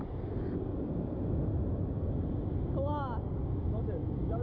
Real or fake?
real